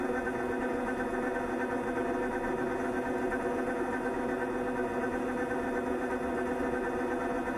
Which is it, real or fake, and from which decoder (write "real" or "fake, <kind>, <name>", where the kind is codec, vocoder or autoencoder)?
real